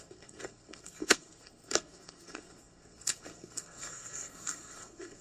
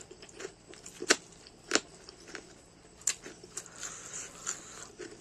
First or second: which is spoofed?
first